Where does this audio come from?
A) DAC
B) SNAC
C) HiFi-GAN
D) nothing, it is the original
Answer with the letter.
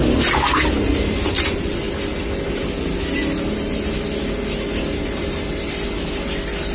D